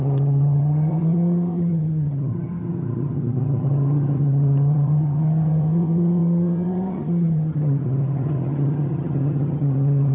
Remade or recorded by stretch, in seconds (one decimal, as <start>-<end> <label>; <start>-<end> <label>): 0.0-10.1 remade